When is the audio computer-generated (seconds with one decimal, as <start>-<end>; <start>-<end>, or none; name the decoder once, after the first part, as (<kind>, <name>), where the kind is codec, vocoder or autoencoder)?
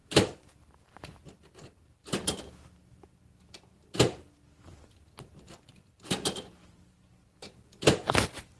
0.0-1.0 (vocoder, BigVGAN v2); 6.6-8.2